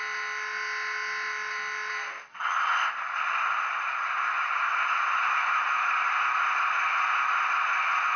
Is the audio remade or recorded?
recorded